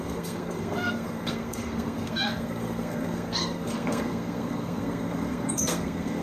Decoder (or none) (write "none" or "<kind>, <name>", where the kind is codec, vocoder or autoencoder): codec, SNAC